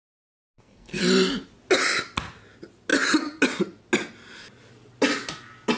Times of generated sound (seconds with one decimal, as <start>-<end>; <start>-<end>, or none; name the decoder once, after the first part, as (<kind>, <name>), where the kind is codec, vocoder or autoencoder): 0.0-1.0 (codec, SNAC)